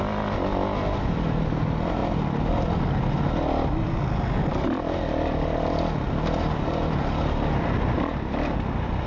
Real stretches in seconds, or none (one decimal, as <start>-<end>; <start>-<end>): 0.0-9.1